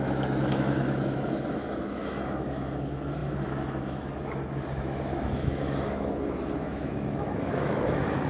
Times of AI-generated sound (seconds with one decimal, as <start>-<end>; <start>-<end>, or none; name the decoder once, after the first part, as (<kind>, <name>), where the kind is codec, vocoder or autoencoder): 0.0-8.3 (autoencoder, DAC-VAE)